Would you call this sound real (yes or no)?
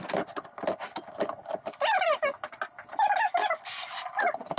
yes